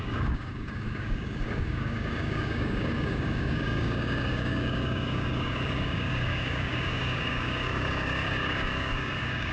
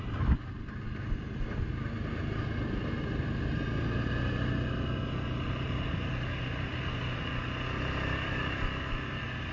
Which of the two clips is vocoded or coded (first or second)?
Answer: first